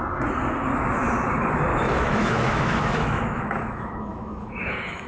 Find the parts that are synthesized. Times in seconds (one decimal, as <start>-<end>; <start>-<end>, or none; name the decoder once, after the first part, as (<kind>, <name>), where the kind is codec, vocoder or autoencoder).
1.7-5.1 (autoencoder, DAC-VAE)